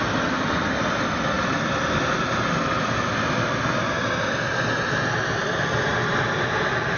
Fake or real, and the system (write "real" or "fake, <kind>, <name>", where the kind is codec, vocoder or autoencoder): real